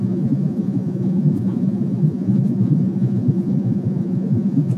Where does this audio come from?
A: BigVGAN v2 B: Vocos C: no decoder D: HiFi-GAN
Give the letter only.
B